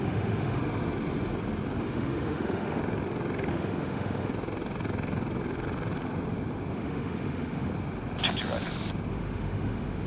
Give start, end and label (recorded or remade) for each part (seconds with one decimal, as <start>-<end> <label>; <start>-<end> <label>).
0.0-0.6 remade; 0.6-1.8 recorded; 1.8-2.8 remade; 2.8-3.5 recorded; 3.5-4.3 remade; 4.3-6.7 recorded; 6.7-7.7 remade; 7.7-9.1 recorded; 9.1-10.1 remade